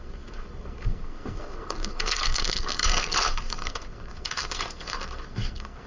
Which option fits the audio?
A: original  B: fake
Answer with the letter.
B